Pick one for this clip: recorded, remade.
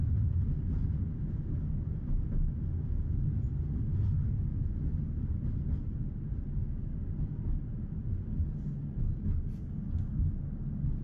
recorded